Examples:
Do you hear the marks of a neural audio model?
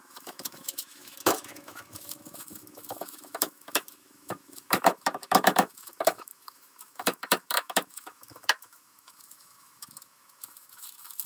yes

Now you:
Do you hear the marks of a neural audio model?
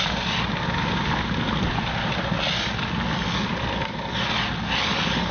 no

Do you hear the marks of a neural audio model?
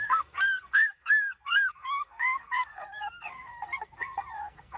yes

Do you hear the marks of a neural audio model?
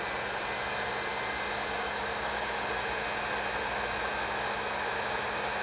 no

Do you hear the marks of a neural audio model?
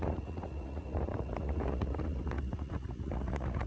yes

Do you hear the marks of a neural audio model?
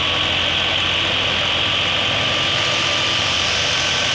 no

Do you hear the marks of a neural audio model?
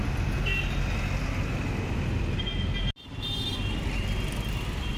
no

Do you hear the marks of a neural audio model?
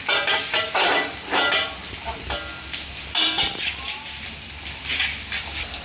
no